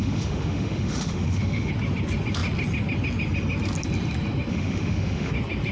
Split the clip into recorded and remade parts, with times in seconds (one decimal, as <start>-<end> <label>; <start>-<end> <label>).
0.0-1.7 remade; 1.7-4.5 recorded; 4.5-5.3 remade; 5.3-5.7 recorded

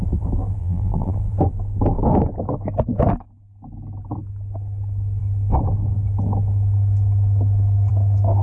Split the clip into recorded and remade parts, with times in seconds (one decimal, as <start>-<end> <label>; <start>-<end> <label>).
0.0-0.6 recorded; 0.6-1.1 remade; 1.1-8.4 recorded

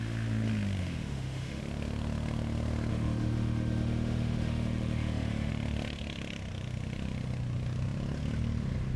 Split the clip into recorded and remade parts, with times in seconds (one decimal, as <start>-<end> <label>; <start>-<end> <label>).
0.0-0.8 recorded; 0.8-1.6 remade; 1.6-2.9 recorded; 2.9-5.5 remade; 5.5-9.0 recorded

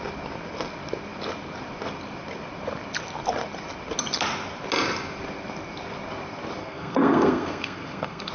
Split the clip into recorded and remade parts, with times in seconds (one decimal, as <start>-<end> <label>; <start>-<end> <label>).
0.0-6.6 recorded; 6.6-8.3 remade

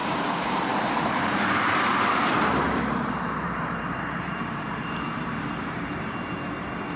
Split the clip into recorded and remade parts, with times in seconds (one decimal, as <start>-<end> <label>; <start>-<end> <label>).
0.0-1.4 remade; 1.4-1.9 recorded; 1.9-6.1 remade; 6.1-7.0 recorded

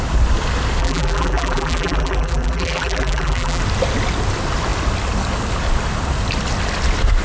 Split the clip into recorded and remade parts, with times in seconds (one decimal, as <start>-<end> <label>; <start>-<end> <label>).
0.0-0.8 recorded; 0.8-3.6 remade; 3.6-7.2 recorded

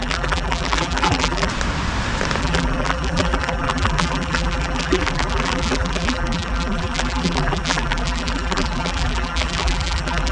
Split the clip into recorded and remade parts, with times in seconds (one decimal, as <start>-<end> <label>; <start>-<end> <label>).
0.0-1.5 remade; 1.5-2.4 recorded; 2.4-10.3 remade

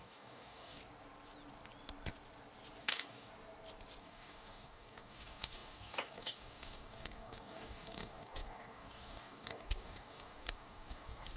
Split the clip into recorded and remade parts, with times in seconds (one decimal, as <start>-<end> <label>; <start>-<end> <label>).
0.0-0.8 remade; 0.8-2.8 recorded; 2.8-3.3 remade; 3.3-4.0 recorded; 4.0-11.4 remade